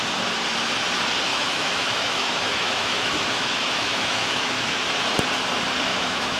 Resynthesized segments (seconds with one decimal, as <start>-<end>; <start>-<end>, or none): 1.3-5.1; 5.9-6.4